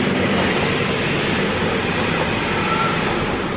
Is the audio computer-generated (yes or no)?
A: no